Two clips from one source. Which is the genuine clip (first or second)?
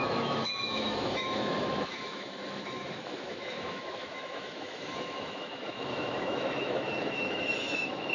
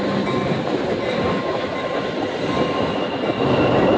second